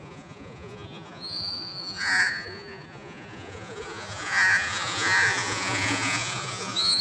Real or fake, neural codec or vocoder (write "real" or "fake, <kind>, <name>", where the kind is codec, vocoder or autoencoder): fake, vocoder, Vocos